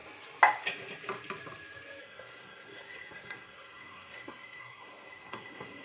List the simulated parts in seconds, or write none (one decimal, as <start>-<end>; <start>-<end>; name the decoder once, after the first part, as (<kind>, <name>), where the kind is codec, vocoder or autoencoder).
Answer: 2.0-5.8 (codec, SNAC)